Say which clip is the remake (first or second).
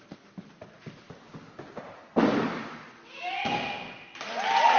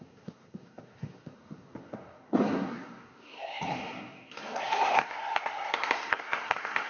second